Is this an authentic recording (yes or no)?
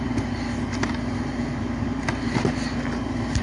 yes